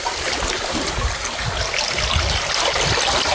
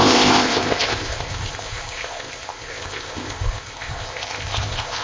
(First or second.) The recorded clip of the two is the first